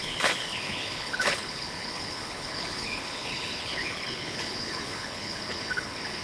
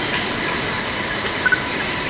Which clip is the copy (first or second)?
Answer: first